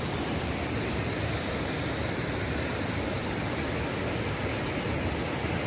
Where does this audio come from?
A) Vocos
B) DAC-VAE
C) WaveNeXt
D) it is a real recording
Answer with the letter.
D